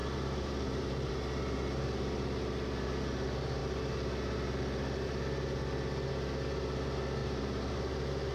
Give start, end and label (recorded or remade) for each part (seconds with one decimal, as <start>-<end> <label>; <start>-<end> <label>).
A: 0.0-1.1 remade; 1.1-7.2 recorded; 7.2-7.9 remade; 7.9-8.3 recorded

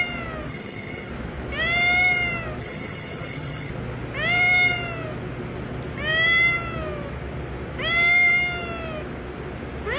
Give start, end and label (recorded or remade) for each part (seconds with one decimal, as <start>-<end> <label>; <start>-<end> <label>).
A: 0.0-0.5 recorded; 0.5-1.1 remade; 1.1-2.6 recorded; 2.6-3.7 remade; 3.7-10.0 recorded